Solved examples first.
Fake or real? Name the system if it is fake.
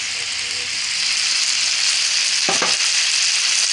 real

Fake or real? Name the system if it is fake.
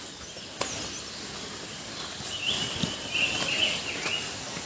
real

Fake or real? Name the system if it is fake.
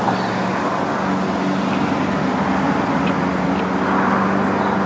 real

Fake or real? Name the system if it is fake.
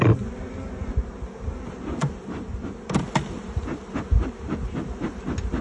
real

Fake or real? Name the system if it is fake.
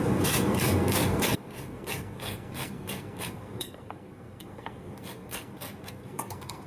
fake, codec, SNAC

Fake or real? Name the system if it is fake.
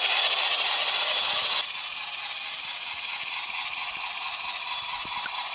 real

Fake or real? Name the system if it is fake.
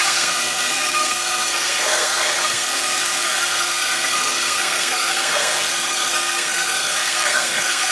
fake, codec, SNAC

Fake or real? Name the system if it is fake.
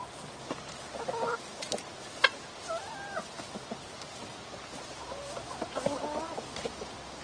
real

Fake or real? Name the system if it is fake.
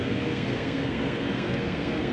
fake, codec, SNAC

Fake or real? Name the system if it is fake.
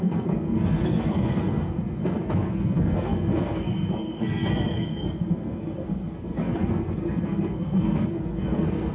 fake, codec, SNAC